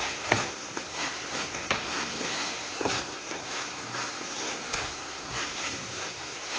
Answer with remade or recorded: remade